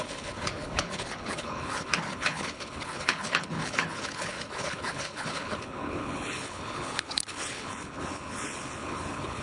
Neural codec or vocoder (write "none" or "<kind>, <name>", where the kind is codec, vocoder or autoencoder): codec, HILCodec